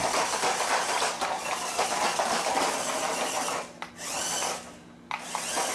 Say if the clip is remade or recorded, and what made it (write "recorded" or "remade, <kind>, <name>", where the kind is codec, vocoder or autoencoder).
recorded